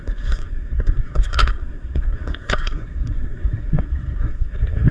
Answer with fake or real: fake